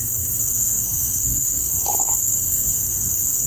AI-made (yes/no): yes